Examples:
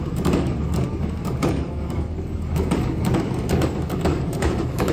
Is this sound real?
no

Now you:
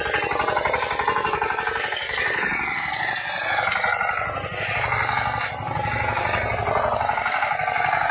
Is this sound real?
yes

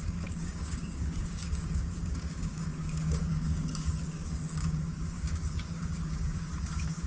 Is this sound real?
no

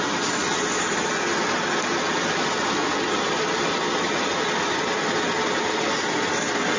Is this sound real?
yes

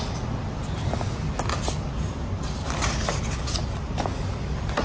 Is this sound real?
yes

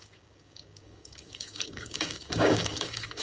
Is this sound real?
no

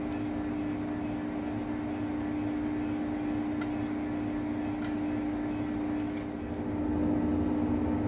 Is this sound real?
yes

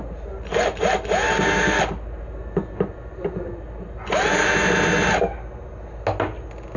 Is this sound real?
yes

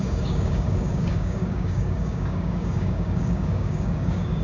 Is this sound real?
no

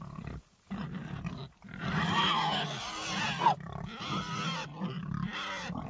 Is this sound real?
yes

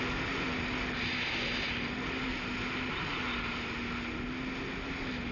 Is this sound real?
yes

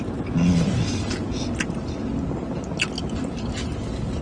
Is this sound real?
yes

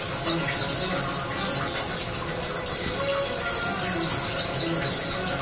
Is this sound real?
yes